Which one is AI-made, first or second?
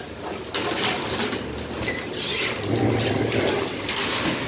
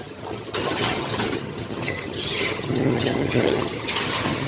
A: second